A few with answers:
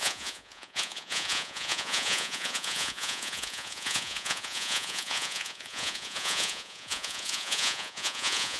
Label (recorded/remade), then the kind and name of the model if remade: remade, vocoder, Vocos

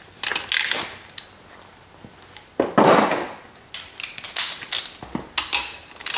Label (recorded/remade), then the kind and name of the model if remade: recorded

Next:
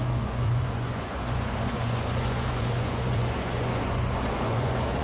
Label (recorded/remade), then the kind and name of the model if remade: remade, vocoder, Vocos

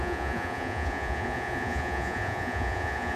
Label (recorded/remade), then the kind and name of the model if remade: remade, vocoder, Vocos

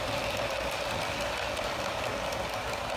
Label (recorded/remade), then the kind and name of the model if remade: recorded